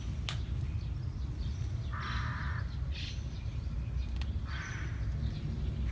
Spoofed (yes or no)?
no